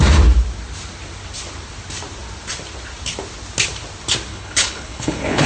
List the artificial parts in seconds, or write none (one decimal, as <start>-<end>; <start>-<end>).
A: 4.3-5.5